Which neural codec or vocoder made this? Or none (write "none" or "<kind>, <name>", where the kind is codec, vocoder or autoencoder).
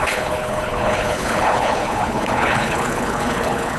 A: codec, HILCodec